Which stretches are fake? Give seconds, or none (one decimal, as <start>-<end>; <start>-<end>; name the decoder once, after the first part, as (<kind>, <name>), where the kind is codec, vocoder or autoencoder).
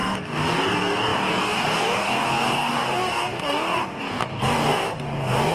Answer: 0.0-5.5 (codec, DAC)